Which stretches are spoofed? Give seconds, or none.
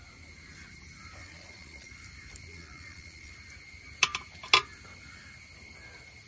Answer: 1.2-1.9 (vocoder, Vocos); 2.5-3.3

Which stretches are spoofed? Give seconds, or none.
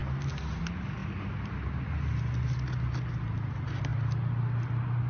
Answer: none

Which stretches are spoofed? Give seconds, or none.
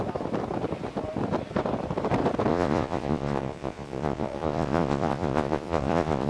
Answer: 2.5-6.3 (vocoder, Vocos)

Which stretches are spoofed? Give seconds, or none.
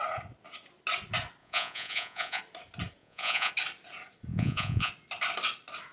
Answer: 1.4-2.4 (vocoder, Vocos); 3.0-3.5; 4.3-4.9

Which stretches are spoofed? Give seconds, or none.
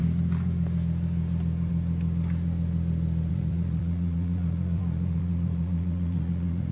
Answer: 3.3-6.7 (vocoder, Vocos)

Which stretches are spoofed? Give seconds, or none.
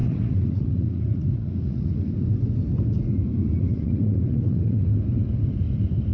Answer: 0.0-2.1 (vocoder, Vocos); 3.4-4.9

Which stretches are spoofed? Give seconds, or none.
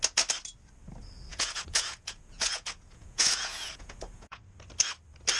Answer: 1.3-4.4 (vocoder, Vocos)